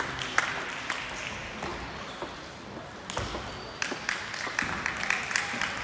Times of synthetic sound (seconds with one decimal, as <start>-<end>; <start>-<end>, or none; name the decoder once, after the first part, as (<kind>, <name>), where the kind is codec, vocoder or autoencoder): none